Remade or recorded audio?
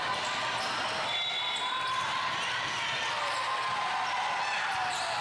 recorded